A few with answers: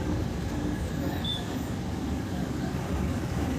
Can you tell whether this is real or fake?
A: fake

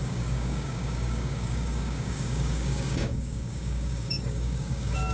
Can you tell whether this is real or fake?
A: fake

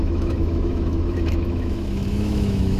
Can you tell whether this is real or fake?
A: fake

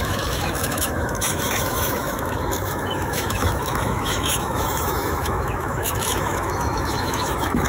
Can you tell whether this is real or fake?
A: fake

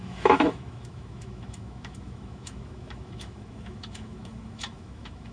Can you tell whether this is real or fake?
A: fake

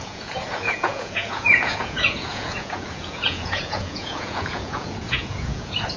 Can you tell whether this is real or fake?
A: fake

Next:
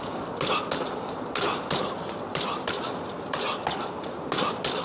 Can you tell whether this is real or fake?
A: real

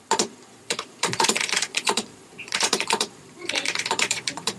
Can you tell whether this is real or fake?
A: fake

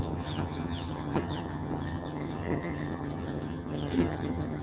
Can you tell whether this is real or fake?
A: fake